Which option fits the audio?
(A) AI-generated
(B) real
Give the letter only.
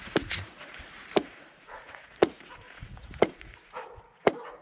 A